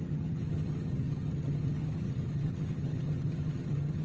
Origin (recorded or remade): remade